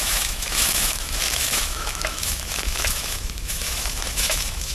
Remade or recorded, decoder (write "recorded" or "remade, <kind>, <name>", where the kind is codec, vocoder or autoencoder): remade, autoencoder, DAC-VAE